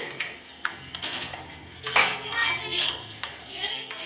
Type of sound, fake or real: fake